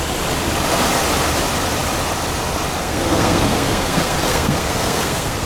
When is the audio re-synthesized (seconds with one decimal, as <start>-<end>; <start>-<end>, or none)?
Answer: 2.8-5.5